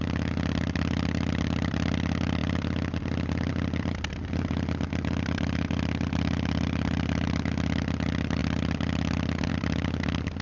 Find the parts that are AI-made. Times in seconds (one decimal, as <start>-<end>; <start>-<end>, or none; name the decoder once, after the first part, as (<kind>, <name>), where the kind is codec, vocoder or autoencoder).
none